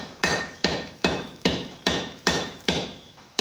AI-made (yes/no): yes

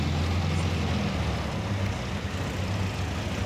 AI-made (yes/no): no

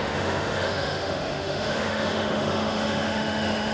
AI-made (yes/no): yes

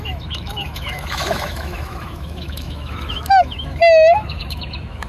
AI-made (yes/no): yes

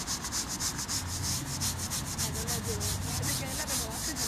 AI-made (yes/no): no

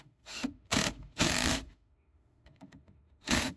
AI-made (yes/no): yes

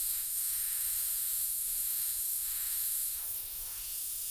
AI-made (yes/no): yes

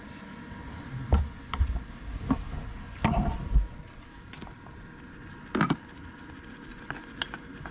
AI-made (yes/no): no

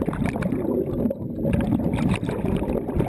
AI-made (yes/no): no